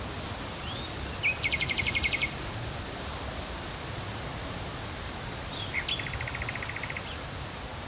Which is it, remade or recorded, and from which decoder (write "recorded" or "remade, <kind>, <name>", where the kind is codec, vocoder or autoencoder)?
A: recorded